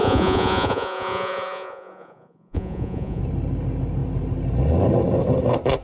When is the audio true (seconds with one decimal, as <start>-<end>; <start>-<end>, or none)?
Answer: 3.2-5.8